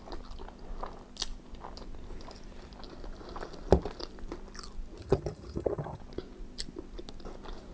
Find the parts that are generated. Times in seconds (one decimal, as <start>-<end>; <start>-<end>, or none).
5.0-6.0